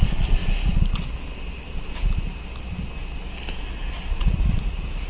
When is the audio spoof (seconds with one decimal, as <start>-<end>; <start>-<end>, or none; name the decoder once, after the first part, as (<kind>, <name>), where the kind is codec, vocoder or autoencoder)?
4.1-5.1 (vocoder, Vocos)